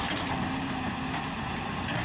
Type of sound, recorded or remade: recorded